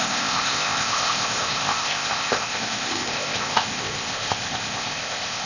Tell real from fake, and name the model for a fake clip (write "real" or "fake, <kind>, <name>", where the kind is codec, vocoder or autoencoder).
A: fake, codec, ZipCodec